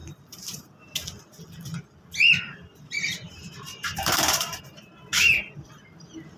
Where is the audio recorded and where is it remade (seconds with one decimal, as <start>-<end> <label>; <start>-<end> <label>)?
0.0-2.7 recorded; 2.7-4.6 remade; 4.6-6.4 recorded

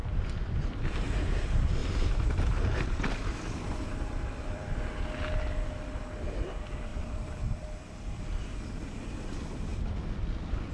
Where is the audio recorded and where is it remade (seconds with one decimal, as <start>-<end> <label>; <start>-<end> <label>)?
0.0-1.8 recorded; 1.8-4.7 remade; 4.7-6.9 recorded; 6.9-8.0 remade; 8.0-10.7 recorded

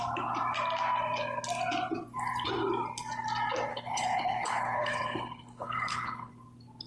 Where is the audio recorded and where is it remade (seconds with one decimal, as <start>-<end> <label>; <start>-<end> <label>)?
0.0-3.7 recorded; 3.7-6.3 remade; 6.3-6.9 recorded

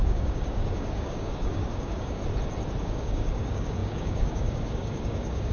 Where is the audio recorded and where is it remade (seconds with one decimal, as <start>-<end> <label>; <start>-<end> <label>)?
0.0-2.2 remade; 2.2-2.8 recorded; 2.8-5.5 remade